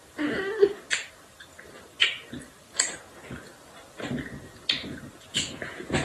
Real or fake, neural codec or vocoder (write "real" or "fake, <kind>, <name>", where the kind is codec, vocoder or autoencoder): real